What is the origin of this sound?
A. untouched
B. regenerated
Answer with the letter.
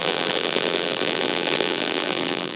B